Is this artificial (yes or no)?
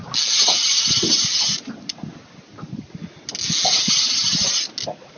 no